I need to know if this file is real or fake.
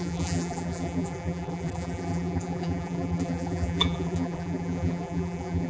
fake